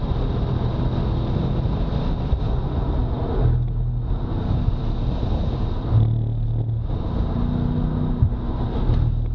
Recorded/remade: recorded